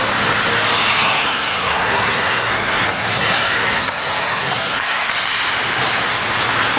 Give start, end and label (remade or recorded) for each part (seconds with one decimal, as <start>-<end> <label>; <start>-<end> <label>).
0.0-1.0 recorded; 1.0-5.1 remade; 5.1-6.8 recorded